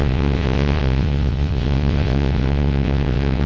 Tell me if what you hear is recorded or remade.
remade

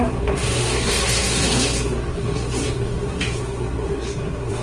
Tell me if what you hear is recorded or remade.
remade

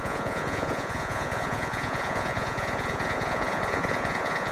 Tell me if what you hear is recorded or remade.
remade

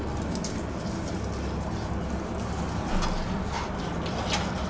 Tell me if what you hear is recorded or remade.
recorded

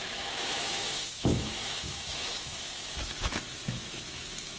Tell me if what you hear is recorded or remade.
remade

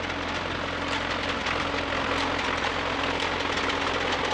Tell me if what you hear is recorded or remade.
recorded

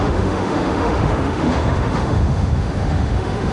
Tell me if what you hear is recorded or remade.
remade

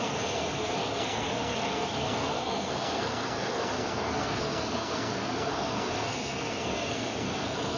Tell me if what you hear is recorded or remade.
remade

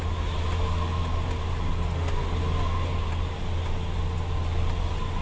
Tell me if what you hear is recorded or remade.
recorded